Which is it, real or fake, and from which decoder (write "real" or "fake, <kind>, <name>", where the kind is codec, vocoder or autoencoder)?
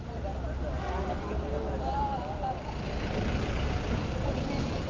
real